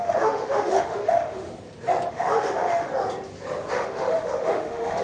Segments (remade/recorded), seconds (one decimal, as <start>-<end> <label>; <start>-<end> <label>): 0.0-1.5 remade; 1.5-2.1 recorded; 2.1-2.9 remade; 2.9-3.7 recorded; 3.7-5.0 remade